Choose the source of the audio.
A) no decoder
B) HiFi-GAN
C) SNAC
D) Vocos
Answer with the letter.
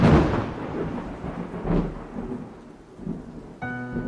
A